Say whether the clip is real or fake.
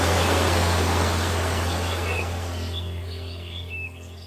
fake